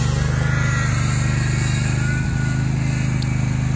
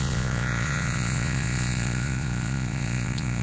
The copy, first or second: second